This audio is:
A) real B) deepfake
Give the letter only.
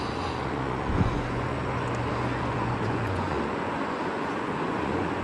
B